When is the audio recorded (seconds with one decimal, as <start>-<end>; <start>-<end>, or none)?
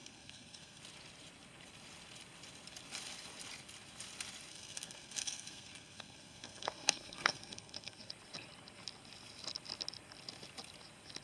0.8-4.5; 8.1-11.2